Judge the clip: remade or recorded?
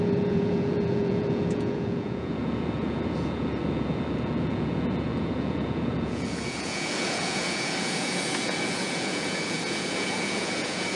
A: remade